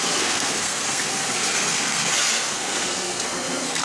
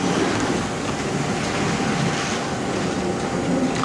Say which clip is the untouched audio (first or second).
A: second